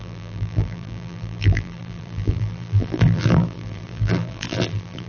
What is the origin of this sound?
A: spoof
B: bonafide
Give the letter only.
A